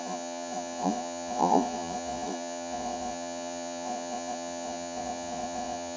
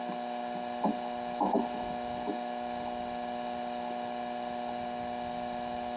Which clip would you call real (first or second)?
second